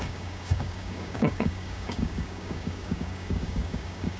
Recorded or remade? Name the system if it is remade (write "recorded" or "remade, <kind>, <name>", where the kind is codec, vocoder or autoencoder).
remade, codec, DAC